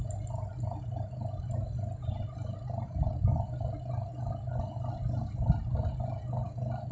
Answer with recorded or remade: recorded